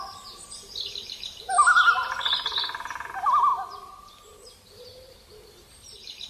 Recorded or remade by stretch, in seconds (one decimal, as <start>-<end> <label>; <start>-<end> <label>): 0.0-3.5 recorded; 3.5-6.3 remade